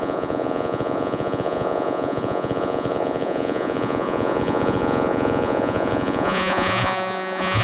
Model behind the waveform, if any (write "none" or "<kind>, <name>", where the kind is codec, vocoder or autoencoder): vocoder, Vocos